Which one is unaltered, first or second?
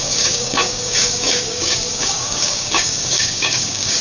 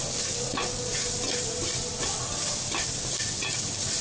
second